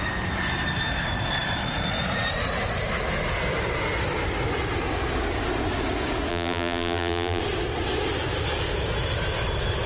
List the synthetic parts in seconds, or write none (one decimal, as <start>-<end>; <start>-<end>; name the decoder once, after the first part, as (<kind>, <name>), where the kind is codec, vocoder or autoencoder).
6.3-7.4 (vocoder, BigVGAN v2)